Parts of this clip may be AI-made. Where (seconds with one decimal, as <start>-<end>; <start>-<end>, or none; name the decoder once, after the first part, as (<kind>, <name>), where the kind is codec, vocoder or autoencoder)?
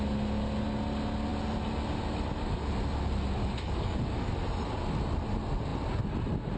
3.4-4.3 (codec, DAC)